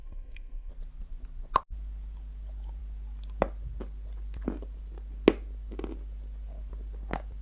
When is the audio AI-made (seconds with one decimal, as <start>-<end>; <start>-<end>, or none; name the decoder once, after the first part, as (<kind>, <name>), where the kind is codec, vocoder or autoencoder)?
0.0-0.7 (codec, SNAC)